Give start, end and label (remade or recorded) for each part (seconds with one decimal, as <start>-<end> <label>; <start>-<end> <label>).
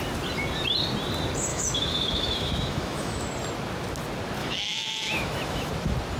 0.0-1.5 recorded; 1.5-3.3 remade; 3.3-4.4 recorded; 4.4-5.7 remade; 5.7-6.2 recorded